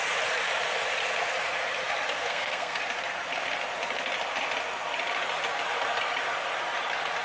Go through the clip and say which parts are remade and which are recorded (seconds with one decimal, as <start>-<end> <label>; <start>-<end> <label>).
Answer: 0.0-2.2 recorded; 2.2-2.8 remade; 2.8-7.2 recorded